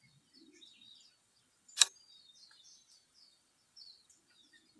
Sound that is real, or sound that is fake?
fake